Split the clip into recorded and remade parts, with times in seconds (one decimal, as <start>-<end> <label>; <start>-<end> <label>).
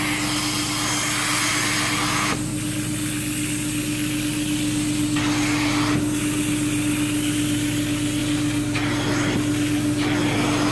0.0-10.7 recorded